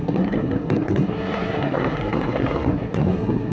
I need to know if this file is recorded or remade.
remade